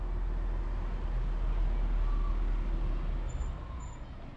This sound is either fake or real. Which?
real